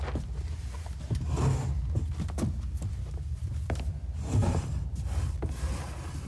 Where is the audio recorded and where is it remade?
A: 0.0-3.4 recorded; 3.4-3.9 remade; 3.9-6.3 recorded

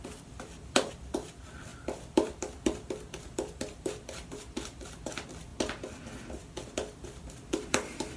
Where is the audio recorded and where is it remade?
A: 0.0-5.5 remade; 5.5-6.0 recorded; 6.0-8.2 remade

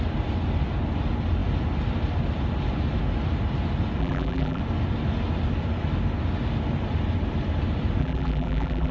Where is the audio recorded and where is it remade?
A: 0.0-4.0 recorded; 4.0-4.6 remade; 4.6-8.0 recorded; 8.0-8.9 remade